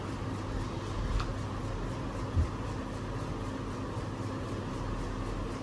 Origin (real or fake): real